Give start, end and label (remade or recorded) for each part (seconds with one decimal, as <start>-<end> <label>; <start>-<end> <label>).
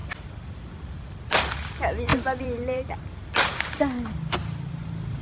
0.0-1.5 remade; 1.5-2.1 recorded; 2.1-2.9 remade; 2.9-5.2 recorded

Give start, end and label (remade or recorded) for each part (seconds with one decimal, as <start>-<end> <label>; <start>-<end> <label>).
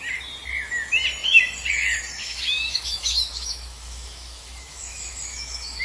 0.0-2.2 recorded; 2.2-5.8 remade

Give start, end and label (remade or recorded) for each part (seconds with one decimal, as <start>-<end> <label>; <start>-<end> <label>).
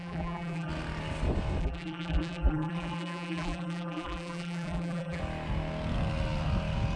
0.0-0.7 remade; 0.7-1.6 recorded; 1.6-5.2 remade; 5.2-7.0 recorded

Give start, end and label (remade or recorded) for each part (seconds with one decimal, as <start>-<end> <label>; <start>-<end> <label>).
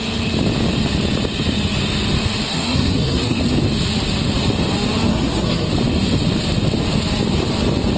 0.0-2.5 recorded; 2.5-3.4 remade; 3.4-5.1 recorded; 5.1-5.7 remade; 5.7-8.0 recorded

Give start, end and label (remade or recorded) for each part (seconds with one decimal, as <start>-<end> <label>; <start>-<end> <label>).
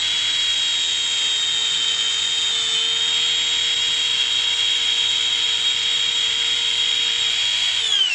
0.0-1.6 recorded; 1.6-2.3 remade; 2.3-4.1 recorded; 4.1-8.1 remade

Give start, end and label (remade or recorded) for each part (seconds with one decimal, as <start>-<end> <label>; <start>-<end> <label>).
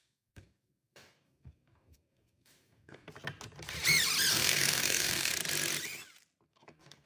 0.0-3.1 remade; 3.1-4.3 recorded; 4.3-5.3 remade; 5.3-6.5 recorded; 6.5-7.1 remade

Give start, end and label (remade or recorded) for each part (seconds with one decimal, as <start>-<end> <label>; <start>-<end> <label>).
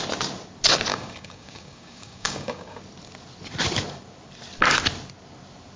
0.0-0.9 recorded; 0.9-2.8 remade; 2.8-5.8 recorded